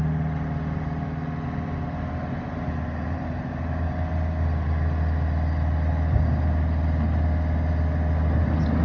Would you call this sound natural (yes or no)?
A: yes